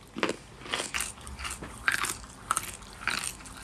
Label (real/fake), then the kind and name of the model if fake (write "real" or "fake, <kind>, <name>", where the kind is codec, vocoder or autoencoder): real